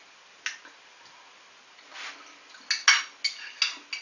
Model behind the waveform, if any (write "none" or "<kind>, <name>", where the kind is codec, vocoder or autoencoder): none